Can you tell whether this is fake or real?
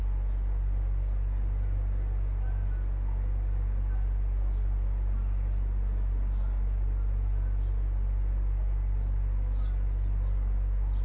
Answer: real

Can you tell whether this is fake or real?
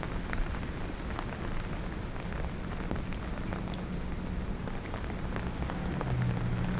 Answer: real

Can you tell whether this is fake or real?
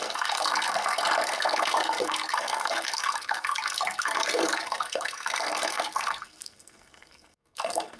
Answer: fake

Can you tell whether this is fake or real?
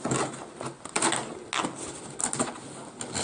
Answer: real